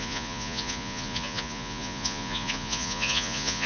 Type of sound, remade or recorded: remade